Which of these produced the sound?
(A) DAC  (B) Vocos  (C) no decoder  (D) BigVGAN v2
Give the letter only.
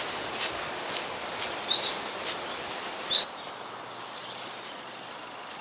C